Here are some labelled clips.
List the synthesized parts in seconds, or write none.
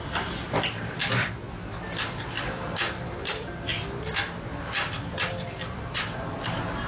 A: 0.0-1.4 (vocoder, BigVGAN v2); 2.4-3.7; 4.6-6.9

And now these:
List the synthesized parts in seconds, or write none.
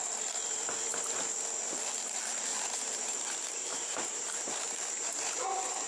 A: 2.5-3.3 (vocoder, BigVGAN v2); 3.7-4.5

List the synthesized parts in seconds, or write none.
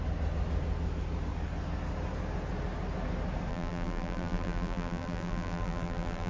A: 3.5-6.3 (vocoder, BigVGAN v2)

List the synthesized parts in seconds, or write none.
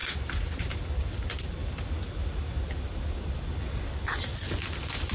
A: 0.0-0.5 (vocoder, BigVGAN v2)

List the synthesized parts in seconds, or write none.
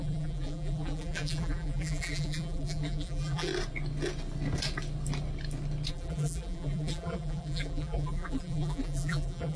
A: 0.0-3.5 (vocoder, BigVGAN v2); 5.9-9.6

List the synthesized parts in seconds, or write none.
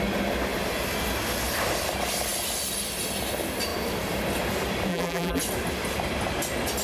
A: 4.9-5.4 (vocoder, BigVGAN v2)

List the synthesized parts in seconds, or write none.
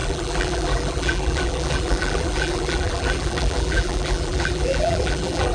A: 0.0-5.5 (vocoder, BigVGAN v2)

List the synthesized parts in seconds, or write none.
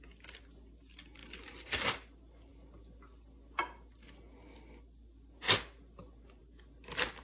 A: none